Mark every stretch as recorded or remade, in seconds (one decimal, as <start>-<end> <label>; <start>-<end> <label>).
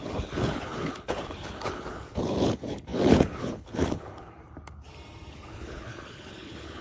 0.0-4.4 remade; 4.4-5.3 recorded; 5.3-6.8 remade